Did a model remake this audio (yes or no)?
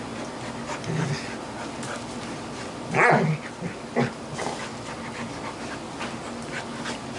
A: no